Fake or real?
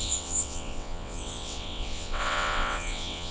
fake